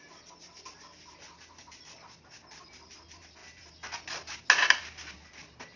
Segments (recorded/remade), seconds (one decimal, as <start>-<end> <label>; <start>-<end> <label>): 0.0-5.8 recorded